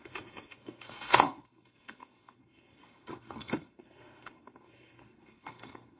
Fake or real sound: fake